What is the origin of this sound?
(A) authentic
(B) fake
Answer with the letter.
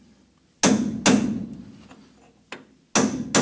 A